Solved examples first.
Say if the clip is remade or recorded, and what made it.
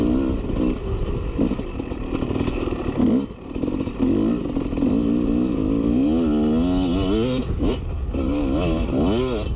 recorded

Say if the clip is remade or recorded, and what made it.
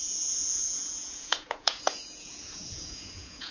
remade, vocoder, Vocos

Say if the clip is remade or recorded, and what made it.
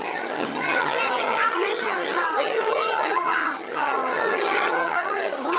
remade, vocoder, HiFi-GAN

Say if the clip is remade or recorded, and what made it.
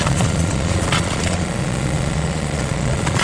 remade, vocoder, Vocos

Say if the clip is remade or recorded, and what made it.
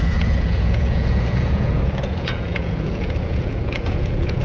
remade, vocoder, Vocos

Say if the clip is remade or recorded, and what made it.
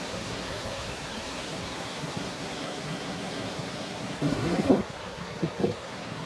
remade, codec, SNAC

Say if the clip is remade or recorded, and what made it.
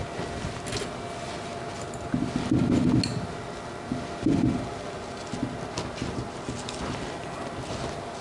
recorded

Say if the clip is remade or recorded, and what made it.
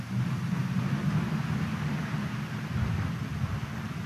recorded